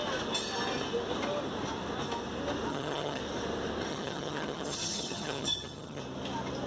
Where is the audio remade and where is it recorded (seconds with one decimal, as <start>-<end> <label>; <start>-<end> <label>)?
0.0-2.7 recorded; 2.7-3.2 remade; 3.2-3.9 recorded; 3.9-6.0 remade; 6.0-6.7 recorded